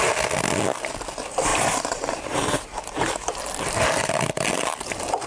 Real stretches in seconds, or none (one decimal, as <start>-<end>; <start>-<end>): 0.0-1.5; 2.7-5.3